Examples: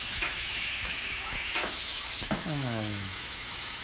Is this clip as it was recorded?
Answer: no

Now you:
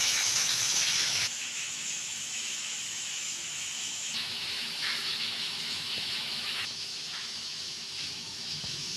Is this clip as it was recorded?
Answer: no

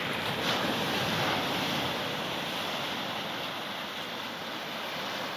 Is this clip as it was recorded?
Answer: yes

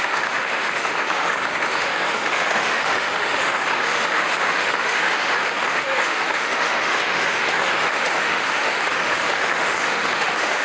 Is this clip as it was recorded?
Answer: no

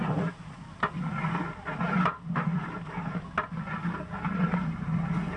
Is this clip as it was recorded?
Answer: yes